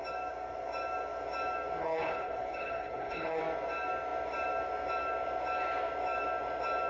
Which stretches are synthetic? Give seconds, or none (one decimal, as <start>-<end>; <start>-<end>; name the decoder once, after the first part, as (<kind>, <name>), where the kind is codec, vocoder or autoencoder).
1.8-3.4 (codec, HILCodec)